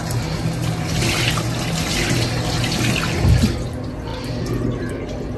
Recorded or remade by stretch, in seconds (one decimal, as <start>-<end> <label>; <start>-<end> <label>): 0.0-5.4 recorded